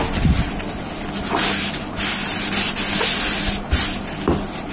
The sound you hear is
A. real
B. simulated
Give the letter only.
A